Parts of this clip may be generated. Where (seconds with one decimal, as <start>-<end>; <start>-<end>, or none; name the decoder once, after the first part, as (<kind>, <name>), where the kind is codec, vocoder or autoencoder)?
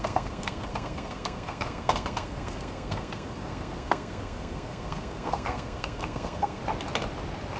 0.0-6.6 (codec, SNAC)